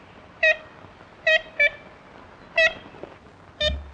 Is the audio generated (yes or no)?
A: no